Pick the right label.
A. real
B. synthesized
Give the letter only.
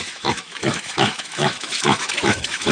B